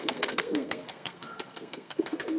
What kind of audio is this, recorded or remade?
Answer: remade